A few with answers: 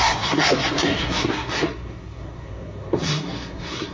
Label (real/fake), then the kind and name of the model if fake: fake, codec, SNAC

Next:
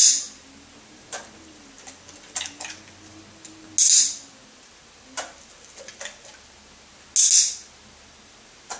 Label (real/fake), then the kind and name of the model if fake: real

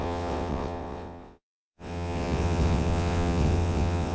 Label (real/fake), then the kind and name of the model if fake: fake, vocoder, WaveNeXt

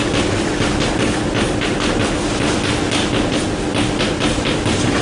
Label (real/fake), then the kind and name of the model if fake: real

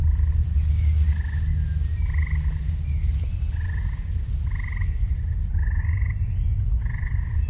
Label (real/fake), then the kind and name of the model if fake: real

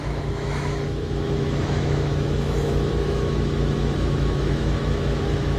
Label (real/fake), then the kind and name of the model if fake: fake, autoencoder, DAC-VAE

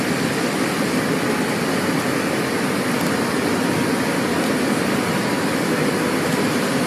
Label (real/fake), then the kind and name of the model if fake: real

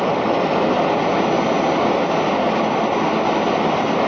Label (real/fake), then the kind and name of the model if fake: real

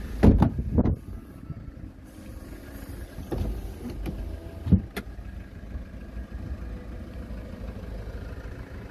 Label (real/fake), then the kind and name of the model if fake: real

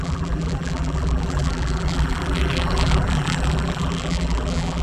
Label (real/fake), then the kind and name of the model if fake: fake, vocoder, BigVGAN v2